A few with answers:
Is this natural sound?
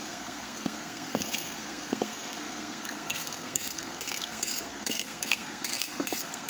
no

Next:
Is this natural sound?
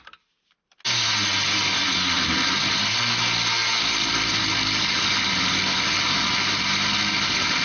yes